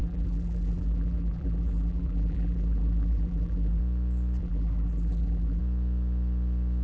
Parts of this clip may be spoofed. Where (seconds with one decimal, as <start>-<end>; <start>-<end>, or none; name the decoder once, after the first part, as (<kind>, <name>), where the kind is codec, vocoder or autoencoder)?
0.0-3.8 (vocoder, BigVGAN v2); 4.4-5.6